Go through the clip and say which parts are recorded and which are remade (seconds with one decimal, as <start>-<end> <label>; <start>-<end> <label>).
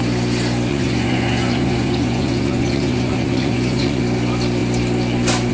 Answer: 0.0-0.7 recorded; 0.7-4.0 remade; 4.0-5.5 recorded